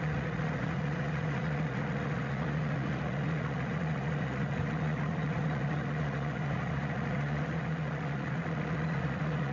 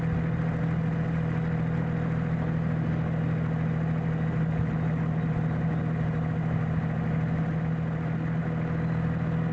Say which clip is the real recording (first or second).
second